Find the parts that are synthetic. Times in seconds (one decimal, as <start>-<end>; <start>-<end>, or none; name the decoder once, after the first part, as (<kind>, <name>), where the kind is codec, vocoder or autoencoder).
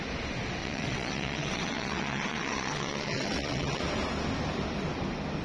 0.6-3.8 (vocoder, WaveNeXt)